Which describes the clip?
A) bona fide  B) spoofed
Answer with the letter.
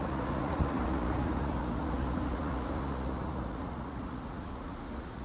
B